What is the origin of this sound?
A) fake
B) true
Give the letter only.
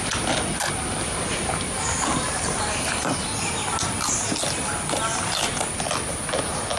B